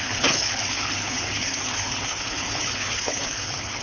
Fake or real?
fake